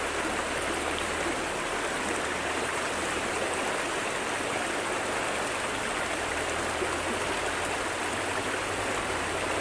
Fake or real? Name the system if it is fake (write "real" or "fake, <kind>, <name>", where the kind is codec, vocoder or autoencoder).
real